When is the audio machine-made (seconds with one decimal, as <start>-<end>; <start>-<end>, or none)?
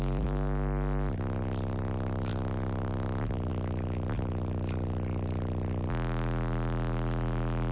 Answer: none